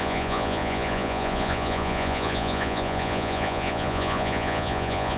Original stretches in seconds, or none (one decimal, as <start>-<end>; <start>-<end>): none